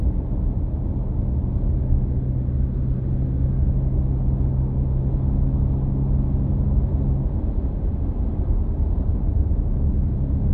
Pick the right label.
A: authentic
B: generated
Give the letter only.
A